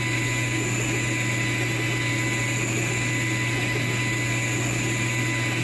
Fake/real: real